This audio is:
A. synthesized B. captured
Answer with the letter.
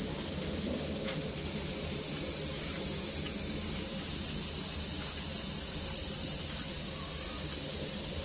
B